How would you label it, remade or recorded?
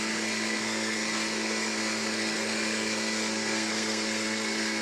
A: remade